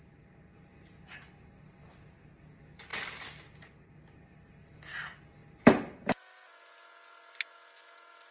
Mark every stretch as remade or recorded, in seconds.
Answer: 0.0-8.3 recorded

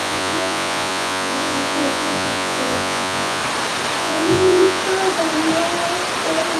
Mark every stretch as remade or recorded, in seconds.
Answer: 0.0-3.4 remade; 3.4-4.0 recorded; 4.0-4.8 remade; 4.8-6.6 recorded